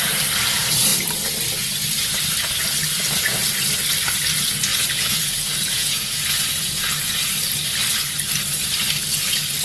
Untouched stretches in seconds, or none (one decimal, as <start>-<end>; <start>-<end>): 0.0-4.7; 7.2-9.6